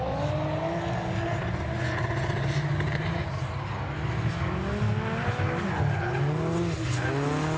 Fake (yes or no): no